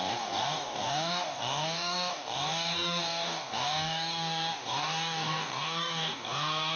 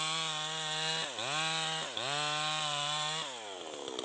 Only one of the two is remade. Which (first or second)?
first